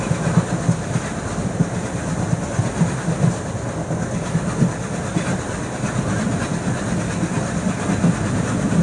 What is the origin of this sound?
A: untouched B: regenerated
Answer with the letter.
A